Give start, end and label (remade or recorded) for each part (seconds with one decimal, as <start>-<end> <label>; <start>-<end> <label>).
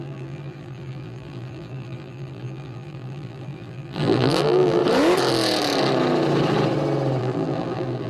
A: 0.0-4.8 remade; 4.8-7.2 recorded; 7.2-8.1 remade